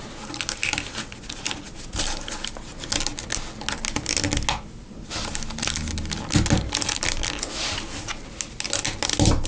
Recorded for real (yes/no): yes